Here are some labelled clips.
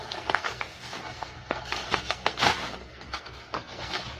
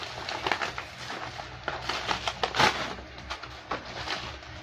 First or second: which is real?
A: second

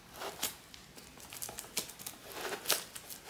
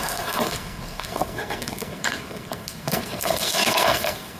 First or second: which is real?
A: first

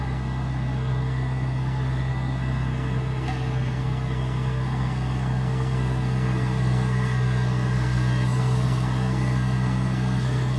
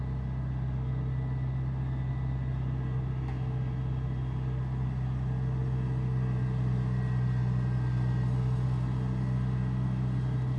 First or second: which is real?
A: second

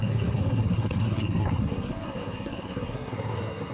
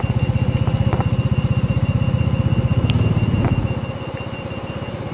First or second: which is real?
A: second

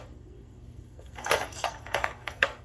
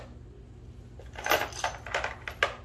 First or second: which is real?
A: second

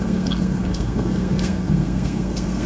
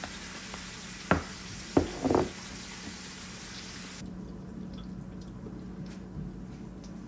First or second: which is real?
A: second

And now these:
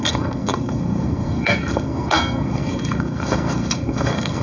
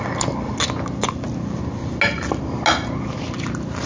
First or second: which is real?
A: second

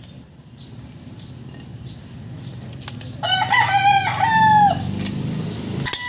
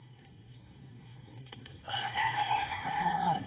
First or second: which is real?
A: first